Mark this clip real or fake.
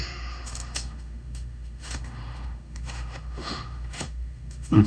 fake